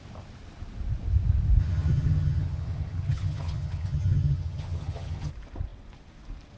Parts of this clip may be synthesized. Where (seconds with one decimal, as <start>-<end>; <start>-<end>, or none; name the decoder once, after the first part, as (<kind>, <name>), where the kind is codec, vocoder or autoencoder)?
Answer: 1.6-5.3 (vocoder, HiFi-GAN)